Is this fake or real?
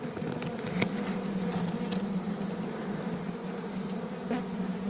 real